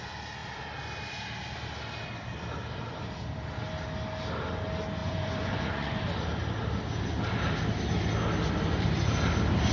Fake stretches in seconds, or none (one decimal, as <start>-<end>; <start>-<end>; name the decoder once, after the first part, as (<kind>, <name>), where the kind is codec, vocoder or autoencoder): 5.0-6.0 (vocoder, Vocos)